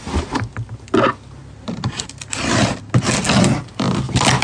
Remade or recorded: recorded